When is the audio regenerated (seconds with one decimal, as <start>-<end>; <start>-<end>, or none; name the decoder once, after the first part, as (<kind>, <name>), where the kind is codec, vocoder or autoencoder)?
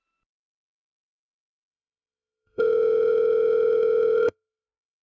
1.7-5.0 (autoencoder, DAC-VAE)